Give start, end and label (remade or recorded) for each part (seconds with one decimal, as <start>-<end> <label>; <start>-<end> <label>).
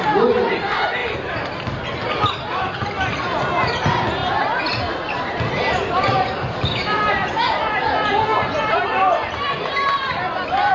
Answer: 0.0-10.7 recorded